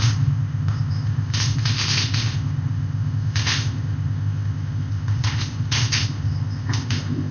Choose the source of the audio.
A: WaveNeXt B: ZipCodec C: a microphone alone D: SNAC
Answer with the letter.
B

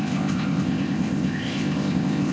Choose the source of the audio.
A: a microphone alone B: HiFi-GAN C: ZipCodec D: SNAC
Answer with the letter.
C